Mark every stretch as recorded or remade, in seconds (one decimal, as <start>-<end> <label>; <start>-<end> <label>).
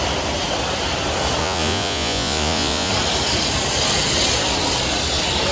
0.0-1.4 recorded; 1.4-2.9 remade; 2.9-5.5 recorded